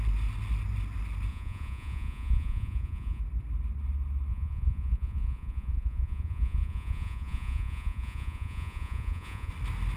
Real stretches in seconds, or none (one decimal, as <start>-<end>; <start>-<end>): 0.0-1.3; 3.2-4.3; 9.5-10.0